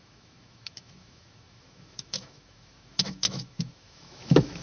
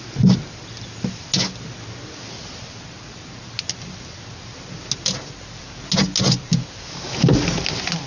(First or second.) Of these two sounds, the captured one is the second